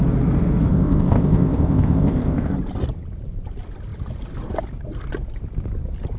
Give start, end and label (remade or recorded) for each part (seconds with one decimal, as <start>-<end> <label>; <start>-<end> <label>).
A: 0.0-0.7 recorded; 0.7-2.5 remade; 2.5-6.2 recorded